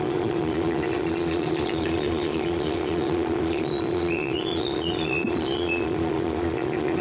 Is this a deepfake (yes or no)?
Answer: yes